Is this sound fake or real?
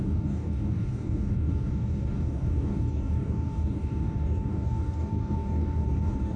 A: fake